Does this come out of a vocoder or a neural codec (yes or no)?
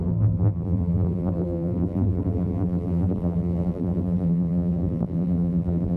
yes